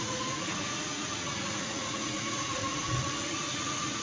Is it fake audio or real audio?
fake